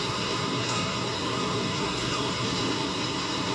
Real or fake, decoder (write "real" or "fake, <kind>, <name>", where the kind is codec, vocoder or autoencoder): fake, codec, SNAC